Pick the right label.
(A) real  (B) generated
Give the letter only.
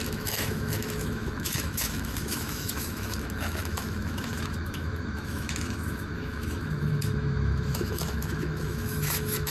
B